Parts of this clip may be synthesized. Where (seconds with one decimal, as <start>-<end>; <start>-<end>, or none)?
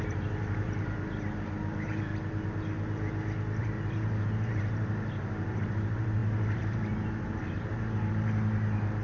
0.0-2.1; 3.6-9.0